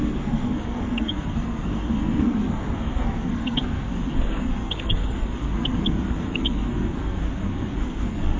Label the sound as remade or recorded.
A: remade